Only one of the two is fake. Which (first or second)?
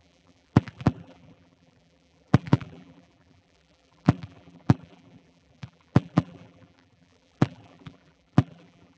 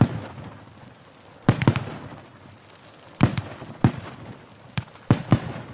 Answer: first